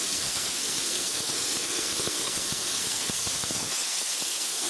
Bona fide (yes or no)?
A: no